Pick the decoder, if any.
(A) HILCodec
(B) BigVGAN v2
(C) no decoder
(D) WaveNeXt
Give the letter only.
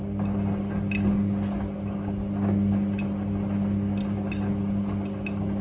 C